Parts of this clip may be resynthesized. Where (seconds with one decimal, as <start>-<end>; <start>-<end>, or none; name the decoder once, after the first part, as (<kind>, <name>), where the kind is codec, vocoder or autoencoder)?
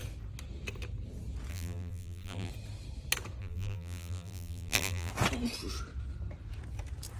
1.5-2.5 (vocoder, BigVGAN v2); 3.4-5.1